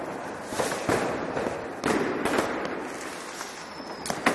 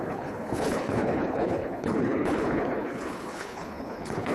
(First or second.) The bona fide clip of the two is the first